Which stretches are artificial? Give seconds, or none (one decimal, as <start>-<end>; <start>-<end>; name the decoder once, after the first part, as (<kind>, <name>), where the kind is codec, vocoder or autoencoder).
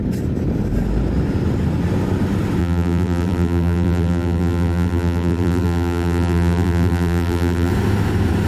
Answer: 2.6-7.7 (vocoder, BigVGAN v2)